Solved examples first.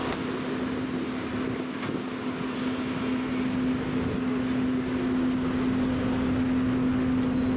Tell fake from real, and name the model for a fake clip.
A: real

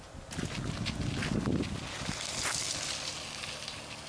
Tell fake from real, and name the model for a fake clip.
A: real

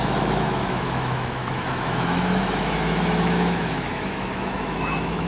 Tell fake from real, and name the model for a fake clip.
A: fake, autoencoder, DAC-VAE